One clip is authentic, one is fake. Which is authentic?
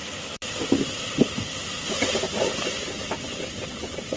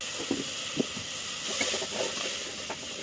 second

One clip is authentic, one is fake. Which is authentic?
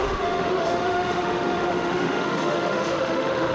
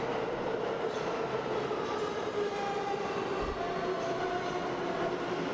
second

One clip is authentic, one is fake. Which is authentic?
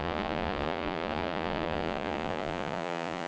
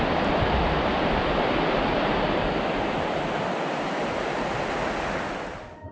second